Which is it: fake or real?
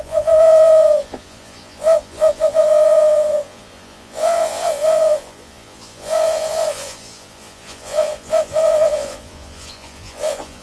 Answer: fake